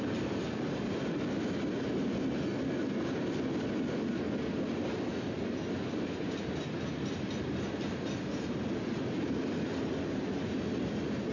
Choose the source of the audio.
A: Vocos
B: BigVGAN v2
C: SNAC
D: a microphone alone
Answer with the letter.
D